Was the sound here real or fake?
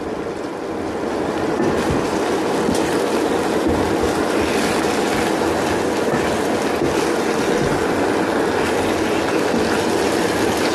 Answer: real